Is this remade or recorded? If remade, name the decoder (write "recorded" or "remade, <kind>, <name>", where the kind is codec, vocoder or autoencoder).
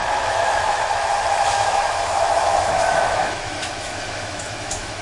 remade, autoencoder, DAC-VAE